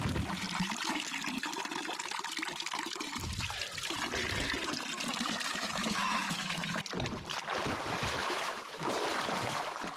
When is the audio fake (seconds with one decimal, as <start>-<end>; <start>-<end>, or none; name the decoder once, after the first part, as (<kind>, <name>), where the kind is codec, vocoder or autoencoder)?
5.5-6.8 (autoencoder, DAC-VAE); 8.2-8.9